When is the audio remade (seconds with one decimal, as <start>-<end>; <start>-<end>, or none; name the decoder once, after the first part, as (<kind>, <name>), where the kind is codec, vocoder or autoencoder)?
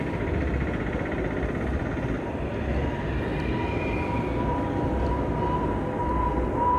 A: 1.7-2.3 (vocoder, BigVGAN v2); 3.3-5.0